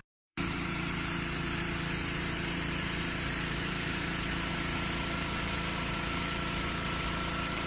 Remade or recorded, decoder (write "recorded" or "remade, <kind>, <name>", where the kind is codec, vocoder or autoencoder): remade, vocoder, BigVGAN v2